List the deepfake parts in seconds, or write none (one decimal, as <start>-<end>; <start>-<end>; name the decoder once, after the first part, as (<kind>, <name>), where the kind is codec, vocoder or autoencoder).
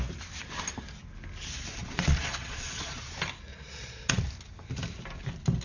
1.8-3.1 (vocoder, Vocos); 3.5-4.2